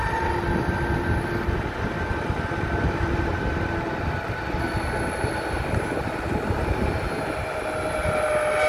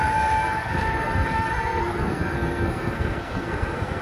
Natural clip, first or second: first